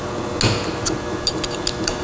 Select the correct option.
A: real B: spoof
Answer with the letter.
A